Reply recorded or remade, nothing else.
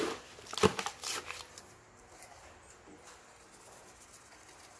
recorded